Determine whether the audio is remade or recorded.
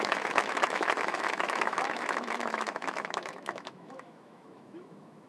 remade